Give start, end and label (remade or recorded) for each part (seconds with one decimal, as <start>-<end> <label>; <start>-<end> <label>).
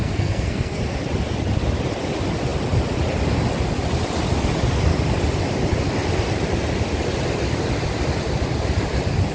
0.0-0.8 remade; 0.8-9.3 recorded